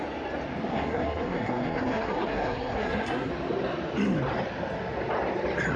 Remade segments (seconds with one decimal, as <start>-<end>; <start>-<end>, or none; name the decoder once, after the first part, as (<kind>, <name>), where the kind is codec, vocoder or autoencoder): 0.7-3.3 (codec, SNAC)